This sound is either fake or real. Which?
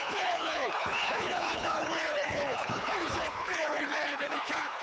fake